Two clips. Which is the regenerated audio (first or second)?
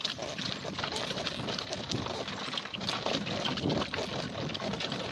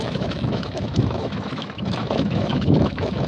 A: second